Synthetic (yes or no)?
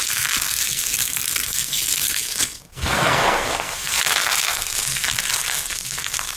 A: yes